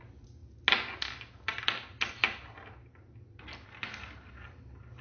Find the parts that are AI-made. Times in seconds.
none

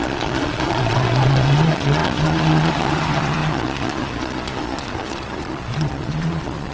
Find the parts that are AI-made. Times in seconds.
0.0-6.7 (vocoder, Vocos)

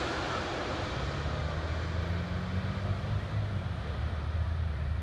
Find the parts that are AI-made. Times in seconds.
0.0-1.4 (vocoder, BigVGAN v2); 3.8-5.0

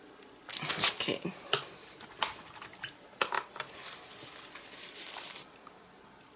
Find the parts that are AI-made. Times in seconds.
none